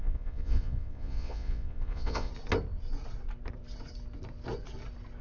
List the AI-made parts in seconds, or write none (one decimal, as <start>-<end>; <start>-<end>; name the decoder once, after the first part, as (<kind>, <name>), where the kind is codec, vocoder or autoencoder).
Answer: 0.0-2.3 (vocoder, Vocos)